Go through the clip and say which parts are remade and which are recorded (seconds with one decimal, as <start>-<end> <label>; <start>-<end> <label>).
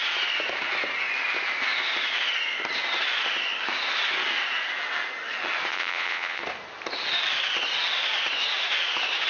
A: 0.0-5.7 recorded; 5.7-6.4 remade; 6.4-9.3 recorded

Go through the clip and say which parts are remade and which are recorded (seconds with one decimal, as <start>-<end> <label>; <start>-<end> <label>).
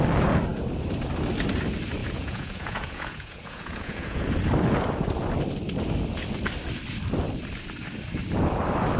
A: 0.0-2.0 recorded; 2.0-4.3 remade; 4.3-9.0 recorded